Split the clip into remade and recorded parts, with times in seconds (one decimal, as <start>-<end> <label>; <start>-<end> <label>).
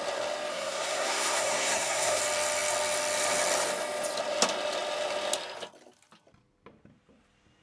0.0-0.5 recorded; 0.5-2.2 remade; 2.2-7.6 recorded